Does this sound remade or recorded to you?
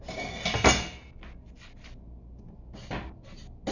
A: recorded